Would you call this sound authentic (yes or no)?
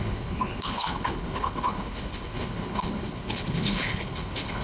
no